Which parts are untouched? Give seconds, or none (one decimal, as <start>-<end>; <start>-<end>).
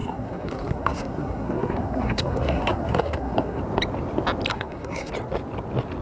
3.6-4.5; 5.1-6.0